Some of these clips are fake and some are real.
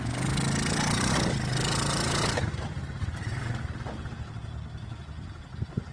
real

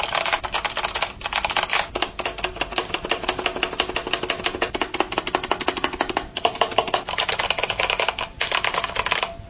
real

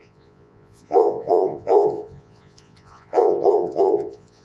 fake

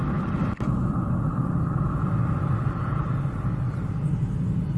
real